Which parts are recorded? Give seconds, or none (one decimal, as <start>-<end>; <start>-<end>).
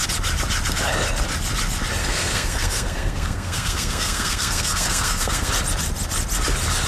0.0-2.0; 5.5-6.9